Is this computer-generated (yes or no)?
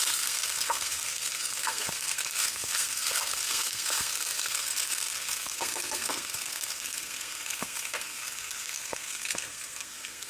yes